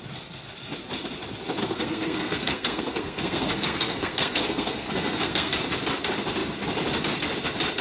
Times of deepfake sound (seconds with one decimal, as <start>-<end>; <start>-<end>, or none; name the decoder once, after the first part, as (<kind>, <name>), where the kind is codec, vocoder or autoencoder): 1.6-5.6 (codec, SNAC)